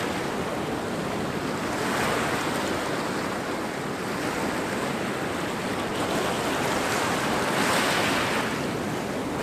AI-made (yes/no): no